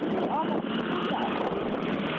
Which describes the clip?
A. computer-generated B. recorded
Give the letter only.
B